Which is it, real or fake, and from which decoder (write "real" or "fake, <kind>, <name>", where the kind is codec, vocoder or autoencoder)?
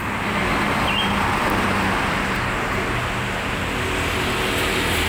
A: real